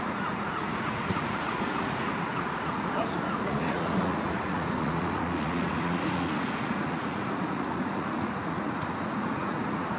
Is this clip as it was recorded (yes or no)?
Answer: no